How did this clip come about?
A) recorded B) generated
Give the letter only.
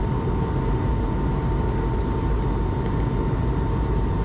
A